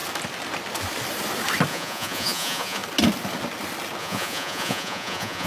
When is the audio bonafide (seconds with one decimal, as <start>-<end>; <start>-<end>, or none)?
0.0-1.7; 2.8-4.0